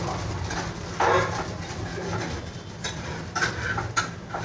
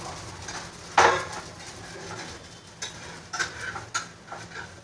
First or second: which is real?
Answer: second